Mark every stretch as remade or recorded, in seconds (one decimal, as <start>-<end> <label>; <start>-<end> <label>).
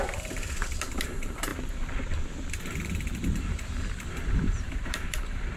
0.0-1.5 remade; 1.5-2.5 recorded; 2.5-5.6 remade